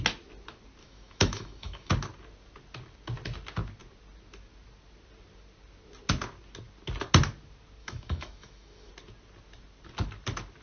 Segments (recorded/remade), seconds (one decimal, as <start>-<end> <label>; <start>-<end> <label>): 0.0-0.8 recorded; 0.8-1.9 remade; 1.9-7.8 recorded; 7.8-8.9 remade; 8.9-10.6 recorded